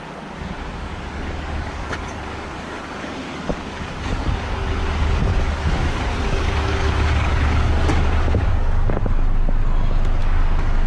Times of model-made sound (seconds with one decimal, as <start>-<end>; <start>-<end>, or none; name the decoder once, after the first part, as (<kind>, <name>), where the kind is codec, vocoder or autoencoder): 0.8-4.8 (codec, DAC); 5.3-9.0; 10.2-10.9